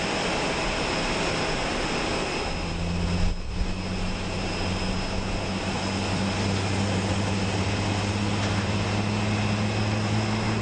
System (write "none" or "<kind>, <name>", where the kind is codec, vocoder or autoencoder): none